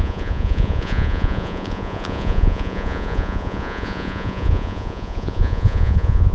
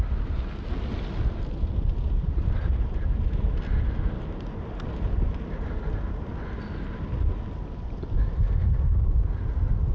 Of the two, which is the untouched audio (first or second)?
second